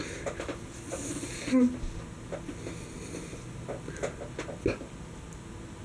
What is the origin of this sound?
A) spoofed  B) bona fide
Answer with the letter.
B